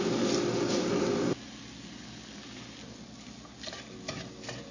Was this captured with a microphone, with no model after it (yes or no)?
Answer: yes